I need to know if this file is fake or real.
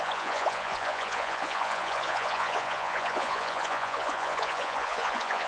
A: fake